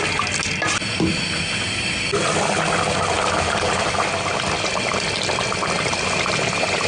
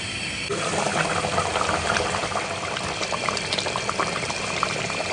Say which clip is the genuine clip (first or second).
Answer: first